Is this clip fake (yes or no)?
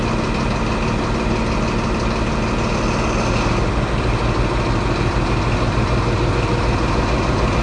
no